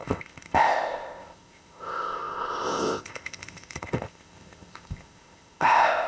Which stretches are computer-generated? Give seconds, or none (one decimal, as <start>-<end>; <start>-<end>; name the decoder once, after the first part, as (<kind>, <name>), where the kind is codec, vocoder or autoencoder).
0.0-6.1 (codec, ZipCodec)